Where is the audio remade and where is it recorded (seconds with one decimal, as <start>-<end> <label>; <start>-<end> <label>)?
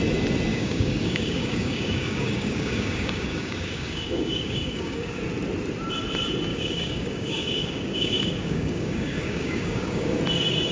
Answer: 0.0-0.5 recorded; 0.5-5.2 remade; 5.2-6.5 recorded; 6.5-10.2 remade; 10.2-10.7 recorded